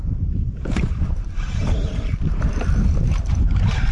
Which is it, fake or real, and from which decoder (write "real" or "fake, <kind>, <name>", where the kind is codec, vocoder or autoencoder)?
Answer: fake, vocoder, BigVGAN v2